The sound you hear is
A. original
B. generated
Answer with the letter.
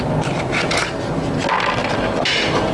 A